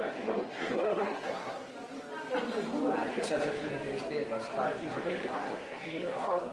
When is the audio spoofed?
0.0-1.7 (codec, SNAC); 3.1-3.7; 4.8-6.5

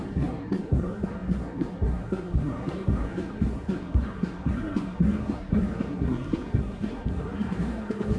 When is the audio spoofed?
0.0-8.2 (codec, SNAC)

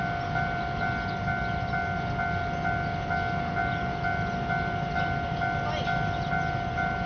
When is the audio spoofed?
none

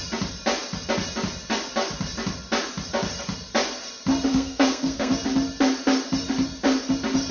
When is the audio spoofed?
4.3-5.1 (codec, SNAC)

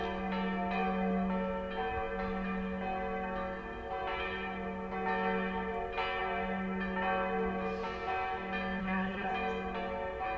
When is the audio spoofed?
8.8-9.3 (codec, SNAC)

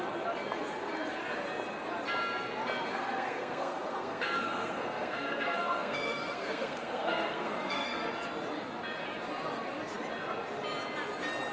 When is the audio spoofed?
2.9-8.1 (codec, SNAC)